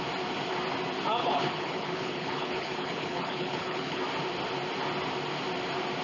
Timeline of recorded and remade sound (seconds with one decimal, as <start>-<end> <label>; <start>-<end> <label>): 0.0-1.2 recorded; 1.2-4.0 remade; 4.0-6.0 recorded